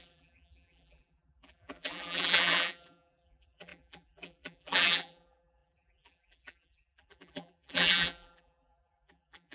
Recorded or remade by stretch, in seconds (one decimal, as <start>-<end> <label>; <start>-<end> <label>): 0.0-9.5 remade